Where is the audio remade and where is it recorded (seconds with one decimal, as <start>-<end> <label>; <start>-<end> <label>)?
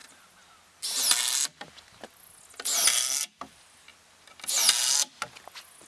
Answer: 0.0-5.9 recorded